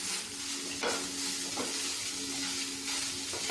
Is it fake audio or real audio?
real